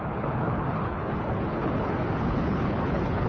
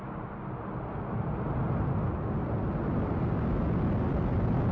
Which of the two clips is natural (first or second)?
second